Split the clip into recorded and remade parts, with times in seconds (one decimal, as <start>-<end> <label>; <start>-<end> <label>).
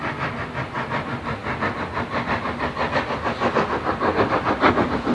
0.0-5.1 recorded